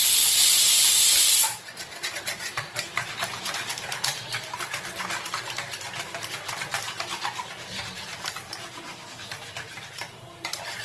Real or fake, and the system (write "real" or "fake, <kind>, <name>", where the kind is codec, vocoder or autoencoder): fake, vocoder, BigVGAN v2